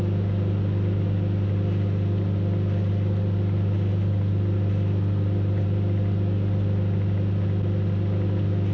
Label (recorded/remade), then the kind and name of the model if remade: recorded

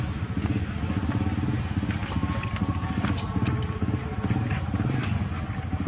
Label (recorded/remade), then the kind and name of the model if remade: recorded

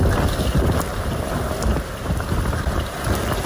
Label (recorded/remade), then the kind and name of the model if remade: recorded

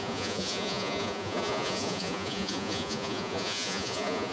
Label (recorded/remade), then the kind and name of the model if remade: remade, vocoder, Vocos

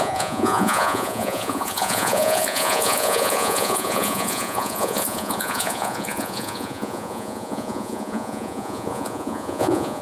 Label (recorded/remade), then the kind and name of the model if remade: remade, vocoder, Vocos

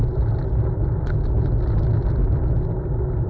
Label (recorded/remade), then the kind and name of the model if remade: recorded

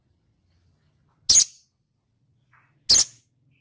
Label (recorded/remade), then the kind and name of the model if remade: recorded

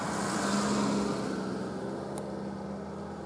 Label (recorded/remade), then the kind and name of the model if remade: recorded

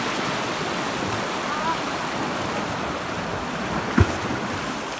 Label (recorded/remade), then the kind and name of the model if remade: recorded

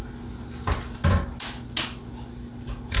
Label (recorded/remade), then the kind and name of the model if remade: recorded